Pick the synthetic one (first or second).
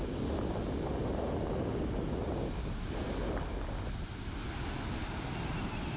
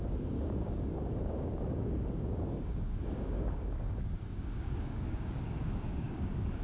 second